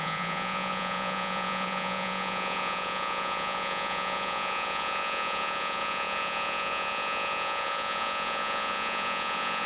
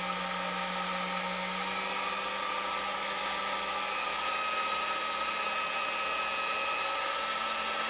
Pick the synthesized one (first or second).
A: first